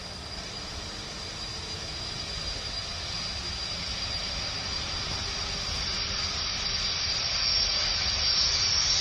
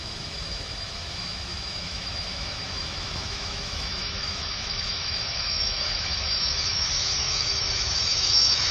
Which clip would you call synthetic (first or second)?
second